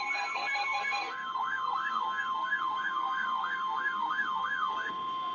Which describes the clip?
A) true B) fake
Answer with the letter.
B